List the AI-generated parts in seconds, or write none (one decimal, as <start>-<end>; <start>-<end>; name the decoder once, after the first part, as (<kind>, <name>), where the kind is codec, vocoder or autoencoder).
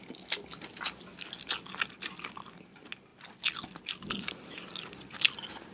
none